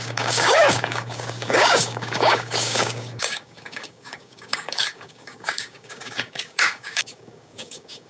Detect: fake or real fake